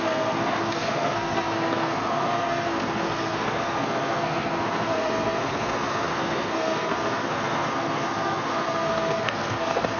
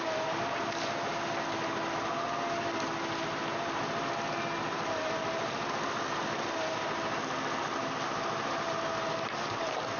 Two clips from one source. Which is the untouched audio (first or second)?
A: second